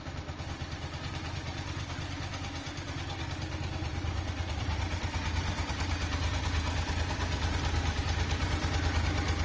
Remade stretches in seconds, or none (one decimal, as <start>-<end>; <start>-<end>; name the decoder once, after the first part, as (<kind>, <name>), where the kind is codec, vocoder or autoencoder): 3.9-8.5 (vocoder, BigVGAN v2)